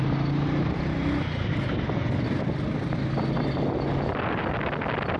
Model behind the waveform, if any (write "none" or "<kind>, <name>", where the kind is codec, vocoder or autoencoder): none